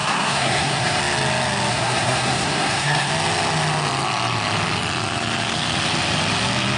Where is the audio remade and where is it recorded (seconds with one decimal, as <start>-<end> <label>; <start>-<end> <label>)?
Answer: 0.0-1.0 remade; 1.0-1.7 recorded; 1.7-3.1 remade; 3.1-6.8 recorded